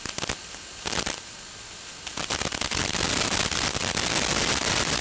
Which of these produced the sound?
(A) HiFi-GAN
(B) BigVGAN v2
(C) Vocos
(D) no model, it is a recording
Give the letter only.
D